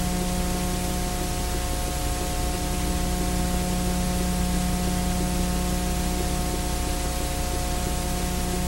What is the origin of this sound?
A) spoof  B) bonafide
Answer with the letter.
B